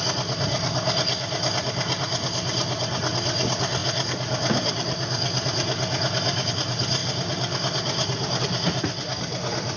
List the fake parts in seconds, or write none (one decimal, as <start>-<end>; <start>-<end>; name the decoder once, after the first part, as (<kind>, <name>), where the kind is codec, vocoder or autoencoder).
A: none